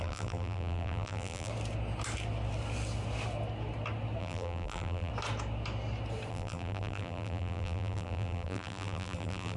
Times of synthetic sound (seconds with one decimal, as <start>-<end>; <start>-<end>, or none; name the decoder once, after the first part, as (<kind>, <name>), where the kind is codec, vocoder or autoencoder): 0.0-1.5 (vocoder, BigVGAN v2); 4.2-5.1; 6.3-9.6

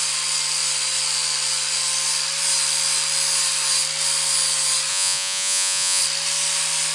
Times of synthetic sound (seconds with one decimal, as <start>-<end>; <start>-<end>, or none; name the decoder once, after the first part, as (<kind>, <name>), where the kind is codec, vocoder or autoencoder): 4.9-6.0 (vocoder, Vocos)

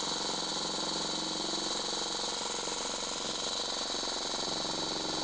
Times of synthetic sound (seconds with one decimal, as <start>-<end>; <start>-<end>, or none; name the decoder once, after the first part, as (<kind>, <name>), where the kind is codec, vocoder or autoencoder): none

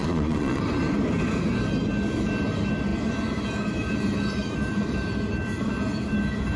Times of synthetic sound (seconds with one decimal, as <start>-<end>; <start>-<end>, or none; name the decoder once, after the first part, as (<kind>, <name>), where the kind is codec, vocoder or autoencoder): 0.0-0.6 (vocoder, Vocos)

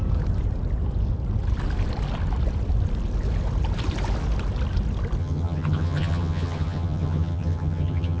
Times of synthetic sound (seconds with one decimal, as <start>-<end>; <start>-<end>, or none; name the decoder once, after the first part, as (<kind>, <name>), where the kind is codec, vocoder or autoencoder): 5.2-8.2 (vocoder, HiFi-GAN)